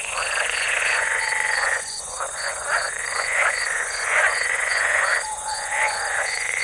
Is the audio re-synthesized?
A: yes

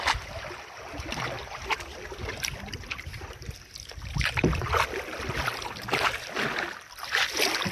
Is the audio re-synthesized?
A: no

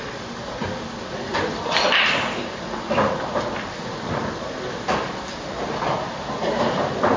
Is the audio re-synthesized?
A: no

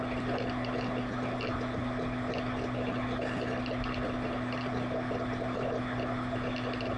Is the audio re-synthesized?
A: no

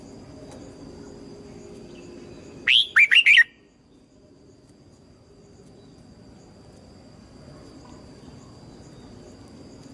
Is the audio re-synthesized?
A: no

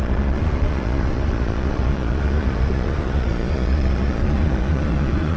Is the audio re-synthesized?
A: yes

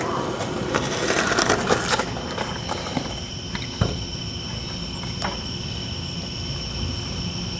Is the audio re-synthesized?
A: no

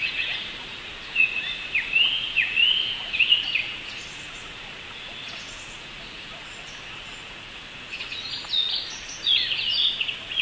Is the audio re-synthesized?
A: yes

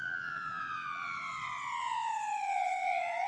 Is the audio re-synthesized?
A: yes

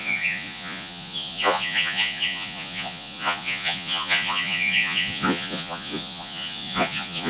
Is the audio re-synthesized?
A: yes